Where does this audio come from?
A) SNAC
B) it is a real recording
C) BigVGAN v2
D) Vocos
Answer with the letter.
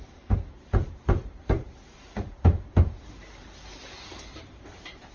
C